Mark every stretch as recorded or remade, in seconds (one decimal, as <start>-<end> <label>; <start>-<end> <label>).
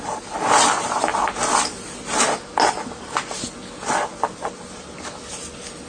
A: 0.0-5.9 recorded